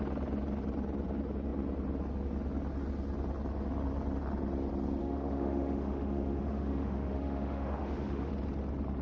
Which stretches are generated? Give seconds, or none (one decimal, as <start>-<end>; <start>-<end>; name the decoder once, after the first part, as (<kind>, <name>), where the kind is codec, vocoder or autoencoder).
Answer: 5.0-8.3 (autoencoder, DAC-VAE)